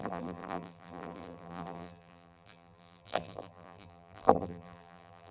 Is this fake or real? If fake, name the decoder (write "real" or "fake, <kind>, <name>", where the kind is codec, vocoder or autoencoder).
fake, vocoder, BigVGAN v2